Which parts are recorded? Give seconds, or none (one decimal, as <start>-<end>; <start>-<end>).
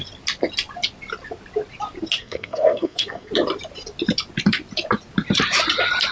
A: 0.0-2.2; 3.3-6.1